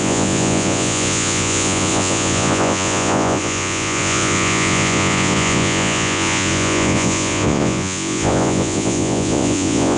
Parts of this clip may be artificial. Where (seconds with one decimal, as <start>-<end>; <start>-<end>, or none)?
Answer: 0.0-10.0